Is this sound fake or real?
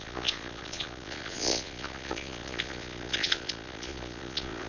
fake